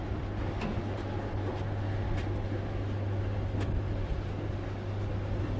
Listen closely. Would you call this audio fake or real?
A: real